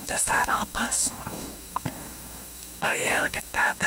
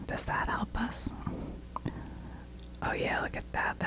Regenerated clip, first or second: first